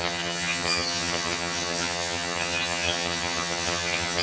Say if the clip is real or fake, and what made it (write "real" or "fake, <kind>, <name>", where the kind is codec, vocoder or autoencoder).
fake, vocoder, HiFi-GAN